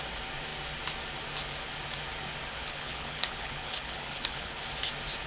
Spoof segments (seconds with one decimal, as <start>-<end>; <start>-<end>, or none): 2.5-4.6